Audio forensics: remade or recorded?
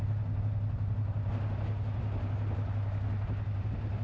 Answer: recorded